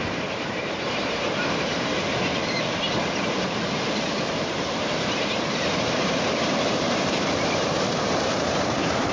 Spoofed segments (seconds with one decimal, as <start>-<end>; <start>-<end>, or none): 0.0-1.9; 4.3-9.1